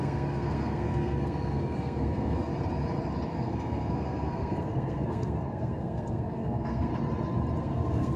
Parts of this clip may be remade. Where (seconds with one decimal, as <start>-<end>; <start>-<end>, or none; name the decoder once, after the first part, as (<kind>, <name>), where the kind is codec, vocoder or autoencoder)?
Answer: 0.0-2.5 (codec, SNAC); 3.3-6.9; 7.6-8.2